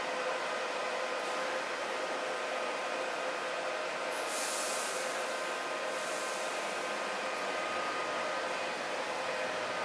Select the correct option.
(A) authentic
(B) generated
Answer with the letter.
A